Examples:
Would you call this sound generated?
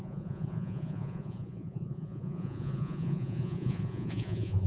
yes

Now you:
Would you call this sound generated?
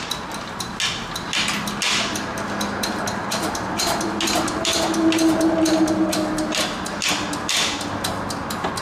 no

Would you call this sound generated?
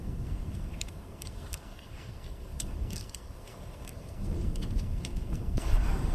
yes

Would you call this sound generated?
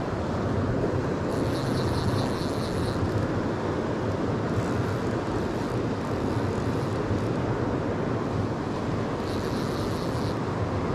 no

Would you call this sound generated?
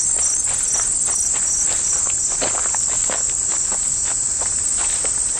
no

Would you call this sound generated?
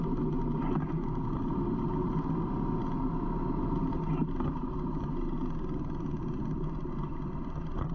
no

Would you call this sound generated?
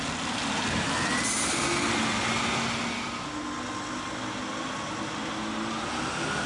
no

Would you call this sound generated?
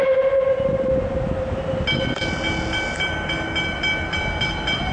no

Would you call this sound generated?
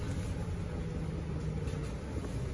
no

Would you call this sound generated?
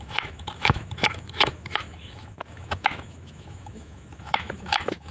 yes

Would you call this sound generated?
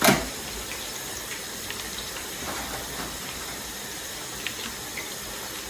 yes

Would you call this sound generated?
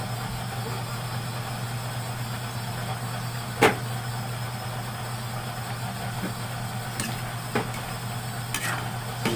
no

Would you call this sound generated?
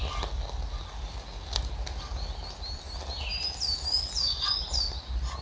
no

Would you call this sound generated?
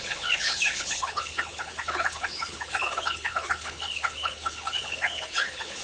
yes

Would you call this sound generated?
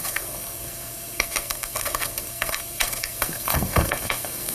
yes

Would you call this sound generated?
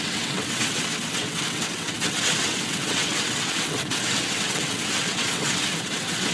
yes